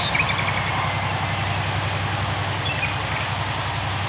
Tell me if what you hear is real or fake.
real